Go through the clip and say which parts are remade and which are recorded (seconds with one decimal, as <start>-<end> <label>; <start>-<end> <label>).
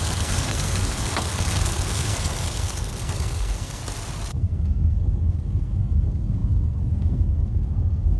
0.0-3.8 remade; 3.8-4.3 recorded; 4.3-8.2 remade